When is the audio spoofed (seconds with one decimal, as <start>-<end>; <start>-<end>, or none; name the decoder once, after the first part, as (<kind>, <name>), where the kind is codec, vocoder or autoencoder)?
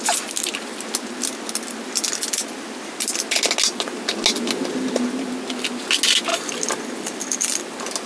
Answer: 6.3-7.6 (vocoder, BigVGAN v2)